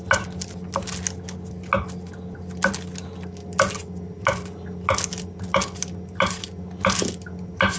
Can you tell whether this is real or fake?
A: real